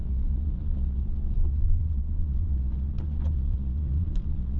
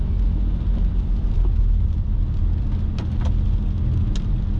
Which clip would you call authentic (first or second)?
second